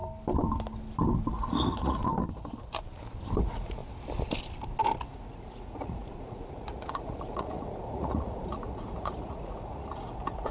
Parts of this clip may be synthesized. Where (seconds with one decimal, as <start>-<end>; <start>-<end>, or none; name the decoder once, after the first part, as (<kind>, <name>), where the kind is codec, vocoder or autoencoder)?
1.3-2.0 (vocoder, Vocos); 3.4-3.8; 5.1-10.5